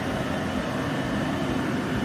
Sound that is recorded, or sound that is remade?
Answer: recorded